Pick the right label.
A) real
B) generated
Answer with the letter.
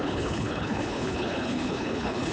B